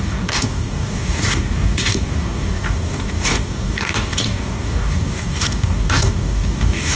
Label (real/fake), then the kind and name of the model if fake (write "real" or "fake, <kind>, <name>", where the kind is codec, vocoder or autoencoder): fake, codec, DAC